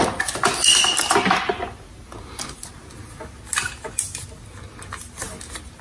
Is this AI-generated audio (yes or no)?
no